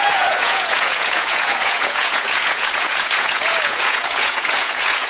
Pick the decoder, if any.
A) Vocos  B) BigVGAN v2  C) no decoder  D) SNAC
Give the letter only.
A